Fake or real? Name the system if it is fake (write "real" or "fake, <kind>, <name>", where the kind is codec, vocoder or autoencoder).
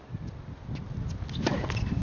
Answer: real